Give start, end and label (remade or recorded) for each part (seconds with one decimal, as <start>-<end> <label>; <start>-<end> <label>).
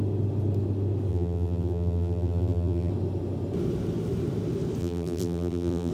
0.0-1.1 recorded; 1.1-2.9 remade; 2.9-4.8 recorded; 4.8-5.9 remade